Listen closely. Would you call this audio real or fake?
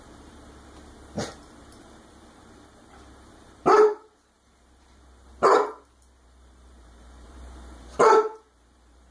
fake